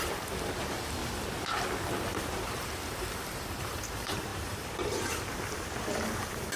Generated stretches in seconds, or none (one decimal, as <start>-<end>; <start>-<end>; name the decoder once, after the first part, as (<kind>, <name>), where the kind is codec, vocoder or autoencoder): 0.0-1.0 (vocoder, BigVGAN v2); 2.2-6.6